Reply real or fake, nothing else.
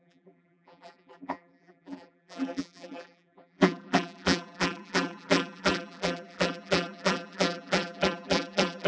fake